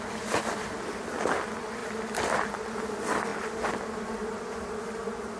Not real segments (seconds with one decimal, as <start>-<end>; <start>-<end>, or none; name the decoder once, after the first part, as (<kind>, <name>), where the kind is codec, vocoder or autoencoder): 1.8-2.8 (vocoder, BigVGAN v2); 3.3-4.3